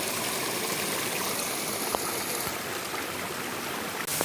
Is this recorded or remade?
recorded